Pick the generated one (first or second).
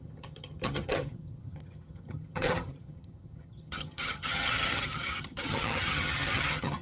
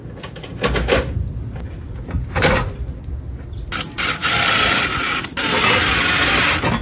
first